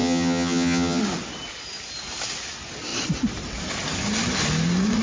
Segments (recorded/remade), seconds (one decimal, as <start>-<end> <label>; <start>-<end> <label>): 0.0-1.0 remade; 1.0-5.0 recorded